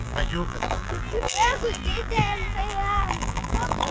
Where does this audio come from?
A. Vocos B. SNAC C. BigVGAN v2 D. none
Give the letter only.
C